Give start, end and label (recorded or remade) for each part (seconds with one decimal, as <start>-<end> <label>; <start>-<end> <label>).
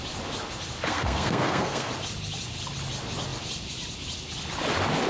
0.0-0.9 recorded; 0.9-1.9 remade; 1.9-5.1 recorded